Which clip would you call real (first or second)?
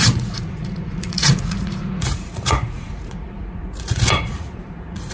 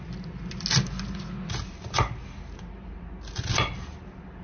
second